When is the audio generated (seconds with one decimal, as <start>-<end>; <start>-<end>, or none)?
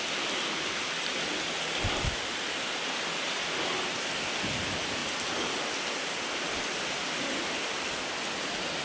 none